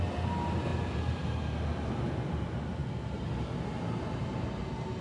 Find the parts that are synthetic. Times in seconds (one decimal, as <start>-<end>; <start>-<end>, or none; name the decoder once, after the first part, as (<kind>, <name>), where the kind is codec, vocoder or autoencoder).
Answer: none